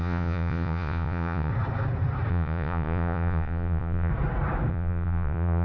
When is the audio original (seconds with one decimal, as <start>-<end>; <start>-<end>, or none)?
1.5-2.3; 4.1-4.7